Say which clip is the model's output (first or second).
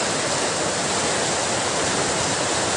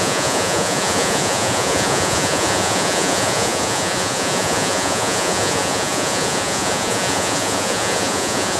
second